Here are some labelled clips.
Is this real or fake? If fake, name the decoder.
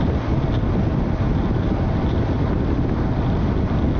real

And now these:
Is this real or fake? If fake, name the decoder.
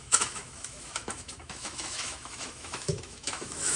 fake, autoencoder, DAC-VAE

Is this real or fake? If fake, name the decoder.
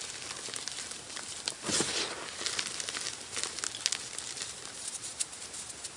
real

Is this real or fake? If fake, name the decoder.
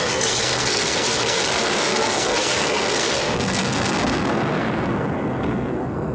fake, codec, SNAC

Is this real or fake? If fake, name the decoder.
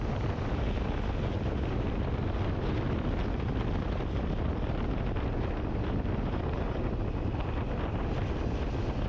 real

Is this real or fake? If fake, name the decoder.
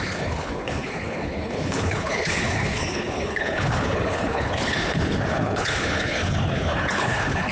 fake, codec, HILCodec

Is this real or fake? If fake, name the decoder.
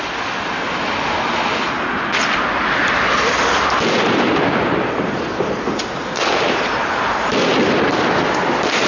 real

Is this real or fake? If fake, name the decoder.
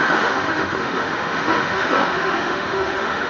fake, autoencoder, DAC-VAE